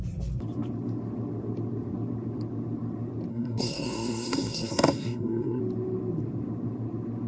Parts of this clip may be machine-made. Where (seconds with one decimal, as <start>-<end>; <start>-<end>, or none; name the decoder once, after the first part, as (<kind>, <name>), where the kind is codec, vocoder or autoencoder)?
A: 3.3-5.6 (codec, SNAC)

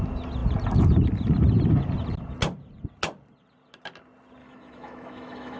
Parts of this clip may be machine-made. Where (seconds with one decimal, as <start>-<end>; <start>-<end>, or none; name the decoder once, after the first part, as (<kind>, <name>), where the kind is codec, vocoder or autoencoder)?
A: 4.4-5.6 (autoencoder, DAC-VAE)

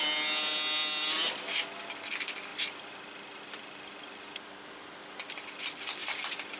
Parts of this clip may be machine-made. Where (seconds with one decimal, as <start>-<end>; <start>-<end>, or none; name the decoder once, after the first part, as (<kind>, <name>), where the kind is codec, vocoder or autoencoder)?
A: none

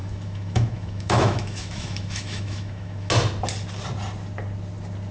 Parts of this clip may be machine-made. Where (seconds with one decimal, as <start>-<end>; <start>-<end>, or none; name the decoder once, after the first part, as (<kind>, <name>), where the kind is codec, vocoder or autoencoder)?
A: 0.0-3.1 (autoencoder, DAC-VAE)

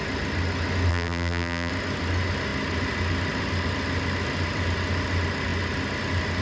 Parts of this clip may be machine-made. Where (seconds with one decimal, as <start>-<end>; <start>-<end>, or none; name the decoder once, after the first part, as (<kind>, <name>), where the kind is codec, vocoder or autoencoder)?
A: 0.9-1.7 (vocoder, BigVGAN v2)